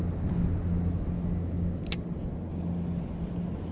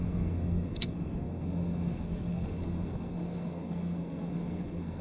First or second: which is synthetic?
second